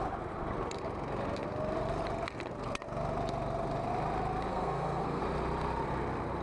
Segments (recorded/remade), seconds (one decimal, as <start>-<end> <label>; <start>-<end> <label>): 0.0-4.5 recorded; 4.5-5.2 remade; 5.2-6.4 recorded